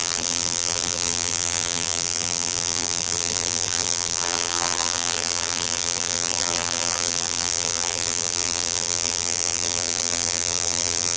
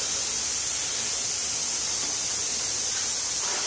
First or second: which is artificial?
first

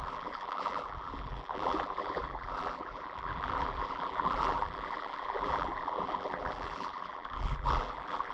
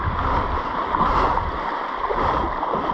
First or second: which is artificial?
first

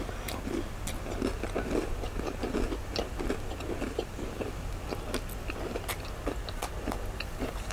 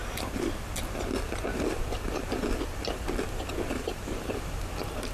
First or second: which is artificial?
second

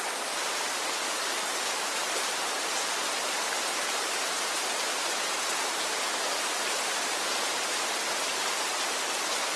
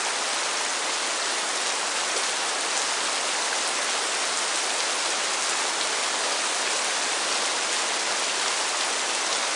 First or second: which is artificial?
first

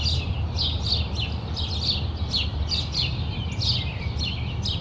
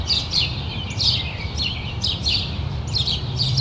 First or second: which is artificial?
second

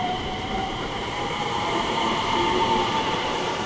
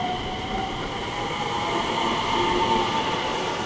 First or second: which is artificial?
first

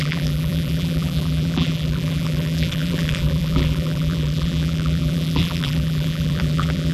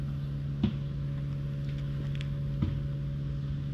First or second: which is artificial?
first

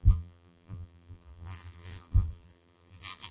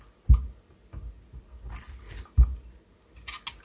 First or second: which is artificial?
first